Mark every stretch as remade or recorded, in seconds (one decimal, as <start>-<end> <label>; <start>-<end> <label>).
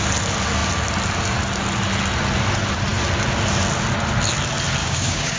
0.0-4.8 recorded; 4.8-5.4 remade